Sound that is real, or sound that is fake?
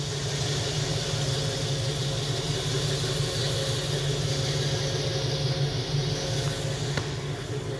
real